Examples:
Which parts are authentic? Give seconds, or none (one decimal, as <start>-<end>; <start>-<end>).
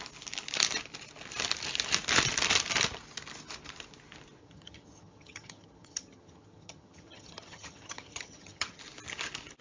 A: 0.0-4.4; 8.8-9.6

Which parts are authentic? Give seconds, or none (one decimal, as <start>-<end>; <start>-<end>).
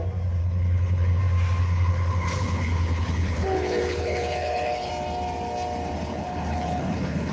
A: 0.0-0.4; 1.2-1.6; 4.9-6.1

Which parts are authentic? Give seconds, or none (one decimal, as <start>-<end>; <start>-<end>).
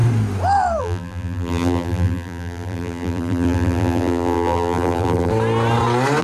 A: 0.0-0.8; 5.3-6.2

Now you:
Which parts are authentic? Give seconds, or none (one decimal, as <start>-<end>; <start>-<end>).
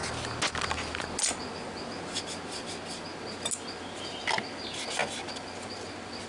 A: 0.0-6.3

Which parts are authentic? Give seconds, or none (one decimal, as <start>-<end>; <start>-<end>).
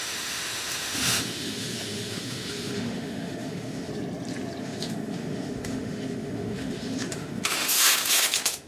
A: 3.9-4.6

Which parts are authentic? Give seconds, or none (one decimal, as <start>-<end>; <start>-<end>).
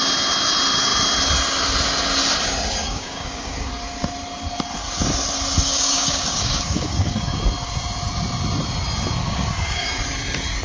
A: 0.0-2.8; 3.7-5.7; 7.4-9.2; 10.0-10.6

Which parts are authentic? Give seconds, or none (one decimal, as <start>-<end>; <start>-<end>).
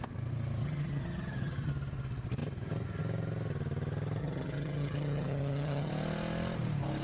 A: 0.0-0.6; 1.7-4.2; 5.9-7.0